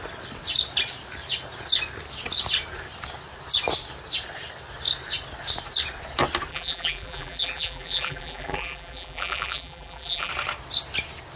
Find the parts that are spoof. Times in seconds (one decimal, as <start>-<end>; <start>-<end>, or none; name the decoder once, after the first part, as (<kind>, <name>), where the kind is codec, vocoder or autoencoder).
6.5-10.3 (vocoder, BigVGAN v2)